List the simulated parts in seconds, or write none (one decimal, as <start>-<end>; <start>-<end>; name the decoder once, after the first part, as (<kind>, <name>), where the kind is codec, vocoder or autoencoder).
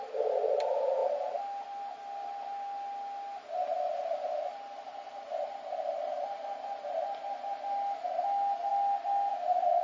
none